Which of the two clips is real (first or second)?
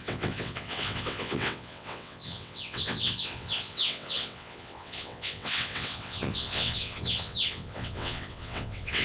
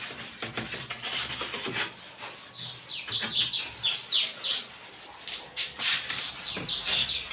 second